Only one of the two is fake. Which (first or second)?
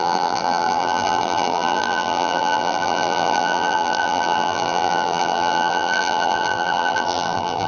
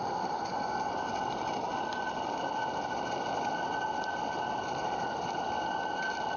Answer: first